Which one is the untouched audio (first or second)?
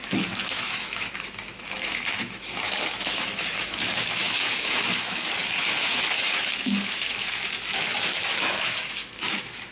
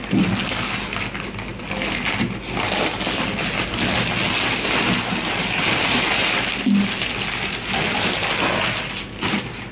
second